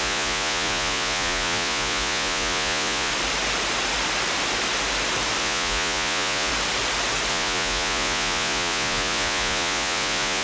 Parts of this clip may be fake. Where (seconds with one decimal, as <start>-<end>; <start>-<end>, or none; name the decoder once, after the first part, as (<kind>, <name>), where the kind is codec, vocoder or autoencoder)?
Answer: 0.0-3.1 (vocoder, Vocos); 5.4-6.5; 7.3-10.4